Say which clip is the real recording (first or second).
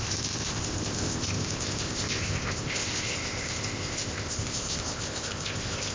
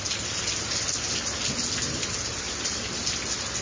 second